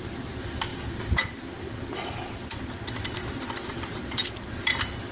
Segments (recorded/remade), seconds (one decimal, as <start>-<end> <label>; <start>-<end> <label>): 0.0-0.7 remade; 0.7-3.8 recorded; 3.8-4.2 remade; 4.2-5.1 recorded